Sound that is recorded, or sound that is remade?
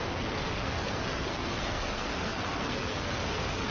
remade